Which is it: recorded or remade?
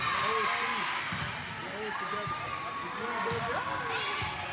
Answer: recorded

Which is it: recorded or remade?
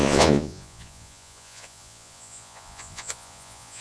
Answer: remade